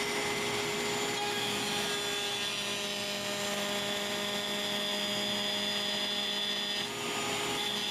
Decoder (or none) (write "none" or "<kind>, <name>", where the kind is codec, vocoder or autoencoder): none